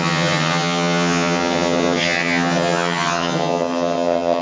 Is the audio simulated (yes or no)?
yes